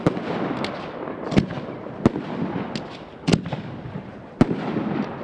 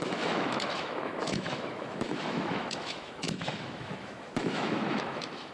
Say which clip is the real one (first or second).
first